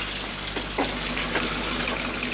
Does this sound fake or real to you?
real